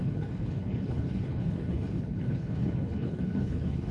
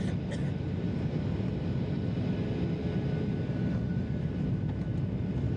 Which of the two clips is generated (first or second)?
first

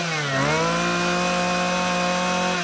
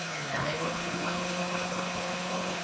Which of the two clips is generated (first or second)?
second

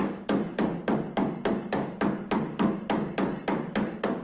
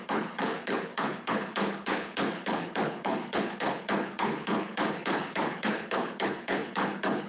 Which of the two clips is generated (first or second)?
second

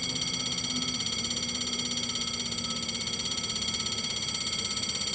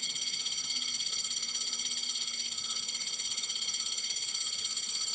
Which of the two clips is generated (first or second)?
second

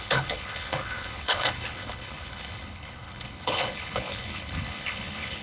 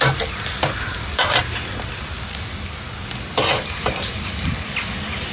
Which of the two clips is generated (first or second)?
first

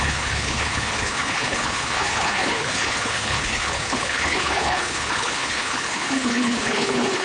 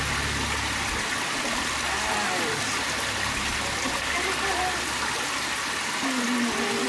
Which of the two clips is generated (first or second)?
first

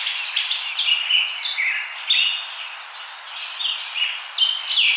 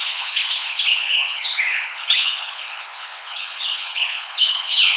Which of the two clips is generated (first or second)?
second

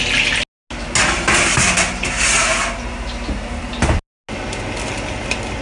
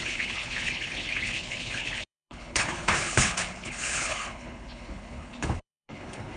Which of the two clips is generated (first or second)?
second